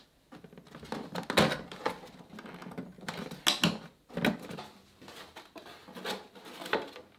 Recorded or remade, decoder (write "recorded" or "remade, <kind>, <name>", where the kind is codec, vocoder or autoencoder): recorded